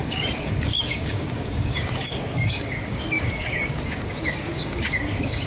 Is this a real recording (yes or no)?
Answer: no